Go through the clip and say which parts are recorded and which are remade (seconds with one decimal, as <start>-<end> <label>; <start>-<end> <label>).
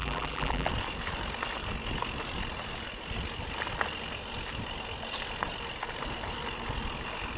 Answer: 0.0-0.7 remade; 0.7-7.4 recorded